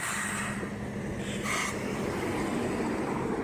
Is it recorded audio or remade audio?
recorded